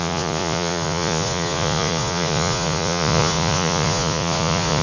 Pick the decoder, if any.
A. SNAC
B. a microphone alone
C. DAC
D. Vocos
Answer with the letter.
D